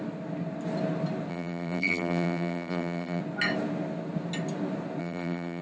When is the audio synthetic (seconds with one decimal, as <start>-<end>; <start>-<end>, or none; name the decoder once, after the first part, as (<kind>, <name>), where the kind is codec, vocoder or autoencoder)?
1.3-3.2 (vocoder, BigVGAN v2); 5.0-5.6